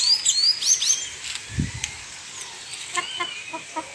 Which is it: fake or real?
real